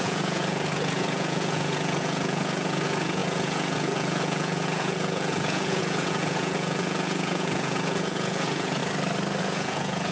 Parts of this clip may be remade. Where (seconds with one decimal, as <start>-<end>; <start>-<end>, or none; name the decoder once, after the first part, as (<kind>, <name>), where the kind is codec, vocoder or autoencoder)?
0.0-8.8 (vocoder, Vocos); 9.4-10.1